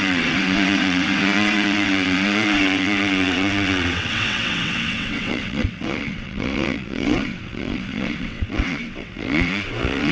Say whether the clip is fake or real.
fake